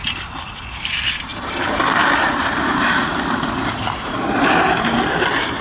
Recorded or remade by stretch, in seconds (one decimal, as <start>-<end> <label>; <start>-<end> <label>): 0.0-0.8 recorded; 0.8-5.6 remade